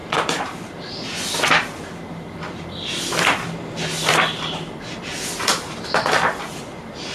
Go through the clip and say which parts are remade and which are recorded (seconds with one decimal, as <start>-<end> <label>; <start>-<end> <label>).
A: 0.0-0.9 remade; 0.9-7.1 recorded